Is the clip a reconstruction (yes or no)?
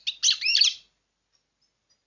no